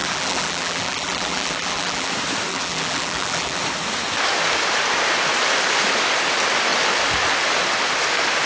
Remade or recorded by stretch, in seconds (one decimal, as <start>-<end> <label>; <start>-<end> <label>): 0.0-2.1 remade; 2.1-2.5 recorded; 2.5-3.6 remade; 3.6-8.5 recorded